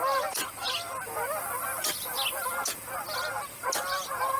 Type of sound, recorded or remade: recorded